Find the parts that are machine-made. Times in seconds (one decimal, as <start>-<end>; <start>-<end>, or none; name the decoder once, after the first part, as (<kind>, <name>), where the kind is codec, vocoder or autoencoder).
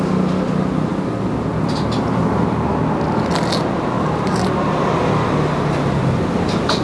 none